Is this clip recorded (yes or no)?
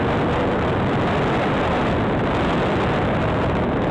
yes